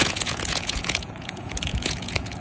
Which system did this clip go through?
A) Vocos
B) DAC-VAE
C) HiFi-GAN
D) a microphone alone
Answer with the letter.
A